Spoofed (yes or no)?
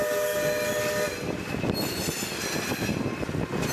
no